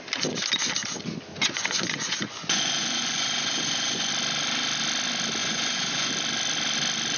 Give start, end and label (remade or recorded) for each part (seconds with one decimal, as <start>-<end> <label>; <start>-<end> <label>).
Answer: 0.0-1.3 recorded; 1.3-4.1 remade; 4.1-5.4 recorded; 5.4-6.1 remade; 6.1-7.2 recorded